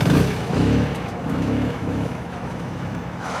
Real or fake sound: fake